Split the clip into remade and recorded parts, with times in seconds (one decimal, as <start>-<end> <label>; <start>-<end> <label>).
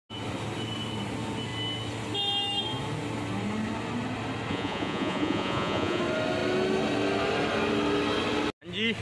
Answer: 0.0-4.5 recorded; 4.5-6.0 remade; 6.0-9.0 recorded